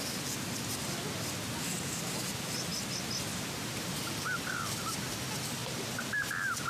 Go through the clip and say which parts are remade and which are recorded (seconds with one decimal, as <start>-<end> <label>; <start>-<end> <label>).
0.0-6.7 recorded